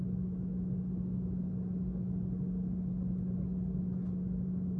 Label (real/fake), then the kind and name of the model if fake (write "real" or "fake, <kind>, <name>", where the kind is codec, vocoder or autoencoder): real